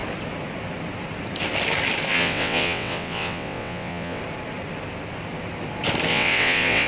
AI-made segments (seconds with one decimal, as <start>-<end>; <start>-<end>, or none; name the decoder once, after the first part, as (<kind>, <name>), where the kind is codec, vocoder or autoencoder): 2.1-4.2 (vocoder, WaveNeXt); 6.1-6.9